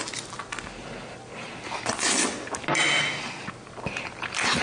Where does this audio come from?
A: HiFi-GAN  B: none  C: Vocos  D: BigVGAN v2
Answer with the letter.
B